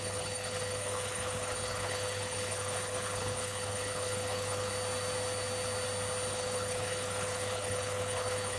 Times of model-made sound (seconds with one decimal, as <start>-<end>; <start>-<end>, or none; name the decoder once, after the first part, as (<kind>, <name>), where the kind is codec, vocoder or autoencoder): 0.0-4.7 (codec, HILCodec); 6.3-8.6